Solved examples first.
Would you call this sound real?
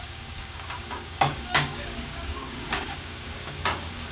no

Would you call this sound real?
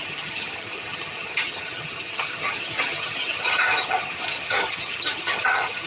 no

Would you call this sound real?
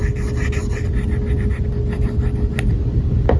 yes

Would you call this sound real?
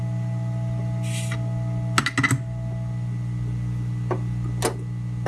yes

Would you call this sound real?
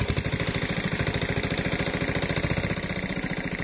yes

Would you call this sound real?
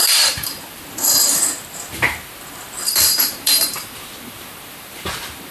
no